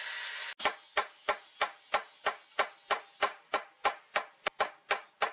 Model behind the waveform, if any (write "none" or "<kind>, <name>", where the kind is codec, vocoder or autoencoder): none